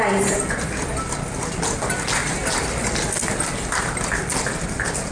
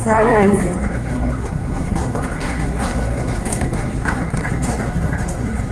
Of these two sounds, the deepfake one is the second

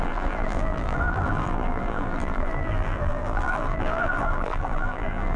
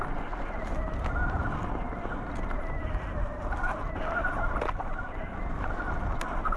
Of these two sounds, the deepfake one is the first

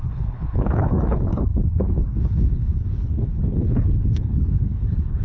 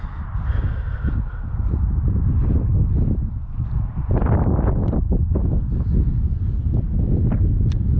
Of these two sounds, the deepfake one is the first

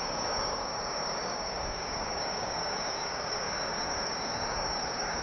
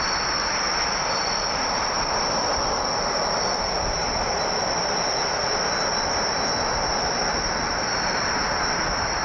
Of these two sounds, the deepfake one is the first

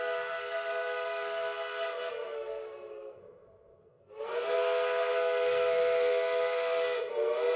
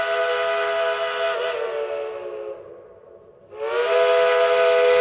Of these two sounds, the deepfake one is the first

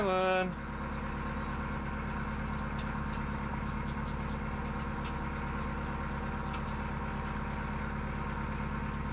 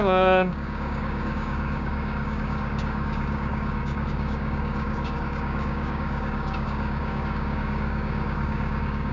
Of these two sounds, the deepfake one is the second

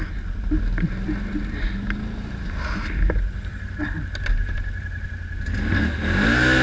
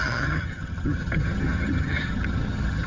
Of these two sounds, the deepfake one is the second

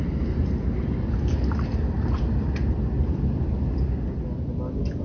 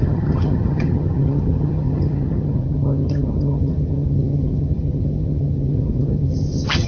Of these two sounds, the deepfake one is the second